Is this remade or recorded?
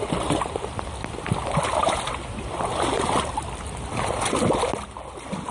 recorded